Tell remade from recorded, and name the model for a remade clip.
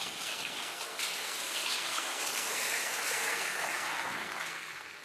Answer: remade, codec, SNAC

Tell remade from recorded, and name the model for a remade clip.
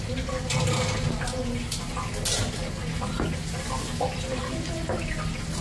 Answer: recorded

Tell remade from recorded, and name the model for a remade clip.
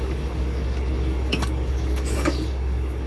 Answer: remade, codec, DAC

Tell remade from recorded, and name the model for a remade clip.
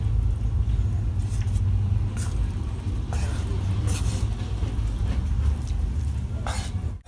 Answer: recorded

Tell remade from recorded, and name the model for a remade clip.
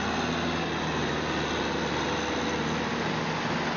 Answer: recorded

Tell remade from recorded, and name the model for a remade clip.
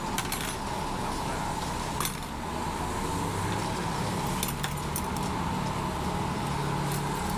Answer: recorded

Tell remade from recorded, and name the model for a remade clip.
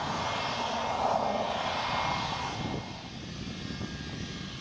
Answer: recorded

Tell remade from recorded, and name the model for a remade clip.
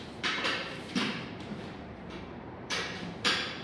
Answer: remade, vocoder, BigVGAN v2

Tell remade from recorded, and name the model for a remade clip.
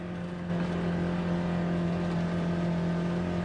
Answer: recorded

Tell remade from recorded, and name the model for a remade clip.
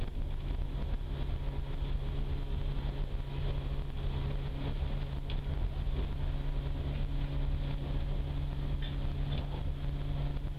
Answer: recorded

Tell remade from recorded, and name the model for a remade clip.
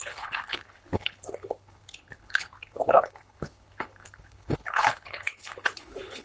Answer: remade, codec, HILCodec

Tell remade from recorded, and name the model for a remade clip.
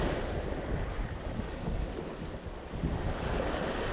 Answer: recorded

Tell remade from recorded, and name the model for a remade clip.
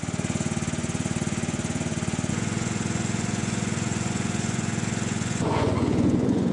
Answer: remade, vocoder, Vocos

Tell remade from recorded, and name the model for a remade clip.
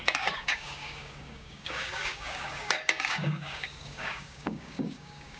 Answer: remade, codec, DAC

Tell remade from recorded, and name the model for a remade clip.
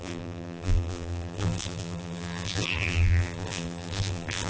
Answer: remade, vocoder, BigVGAN v2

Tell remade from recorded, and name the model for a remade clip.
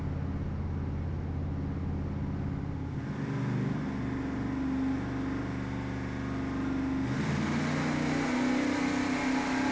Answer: recorded